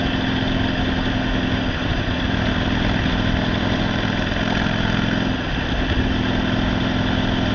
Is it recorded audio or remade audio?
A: recorded